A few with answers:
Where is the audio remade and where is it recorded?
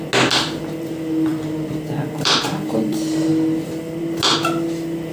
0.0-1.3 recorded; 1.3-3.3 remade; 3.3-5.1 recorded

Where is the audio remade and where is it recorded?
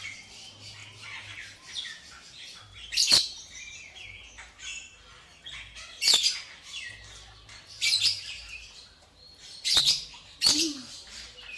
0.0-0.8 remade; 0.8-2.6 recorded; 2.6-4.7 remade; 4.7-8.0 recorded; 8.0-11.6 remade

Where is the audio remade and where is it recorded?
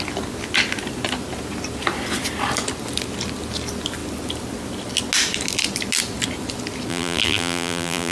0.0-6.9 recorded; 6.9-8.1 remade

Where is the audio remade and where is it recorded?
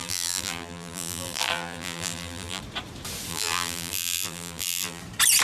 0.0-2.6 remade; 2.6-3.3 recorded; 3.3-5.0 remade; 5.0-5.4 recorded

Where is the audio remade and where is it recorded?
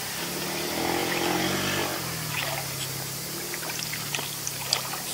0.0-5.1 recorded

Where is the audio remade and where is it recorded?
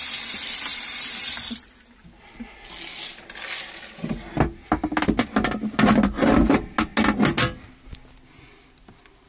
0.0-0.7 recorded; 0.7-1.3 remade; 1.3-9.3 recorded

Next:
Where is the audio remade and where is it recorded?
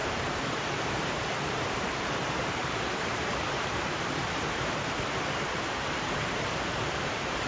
0.0-7.5 remade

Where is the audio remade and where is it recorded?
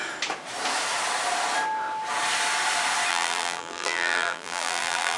0.0-3.1 recorded; 3.1-5.2 remade